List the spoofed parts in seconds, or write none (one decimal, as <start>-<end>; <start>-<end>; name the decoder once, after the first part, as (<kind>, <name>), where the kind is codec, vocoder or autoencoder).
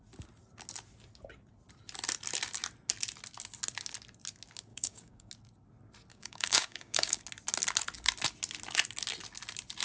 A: 4.7-5.3 (codec, DAC); 6.1-7.2